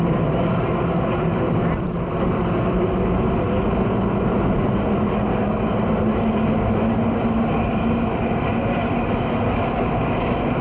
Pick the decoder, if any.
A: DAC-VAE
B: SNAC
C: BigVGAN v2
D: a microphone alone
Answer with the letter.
D